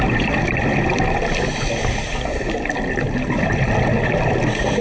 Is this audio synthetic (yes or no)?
no